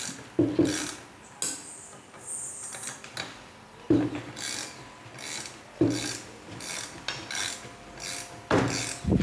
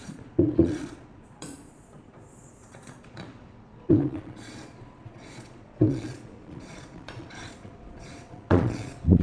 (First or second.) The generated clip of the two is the second